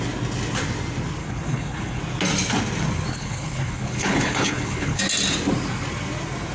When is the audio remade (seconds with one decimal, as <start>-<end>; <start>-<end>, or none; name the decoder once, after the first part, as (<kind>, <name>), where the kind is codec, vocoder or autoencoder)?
1.2-2.0 (codec, HILCodec); 3.1-5.0